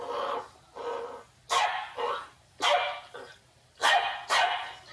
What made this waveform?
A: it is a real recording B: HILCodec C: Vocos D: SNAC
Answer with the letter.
A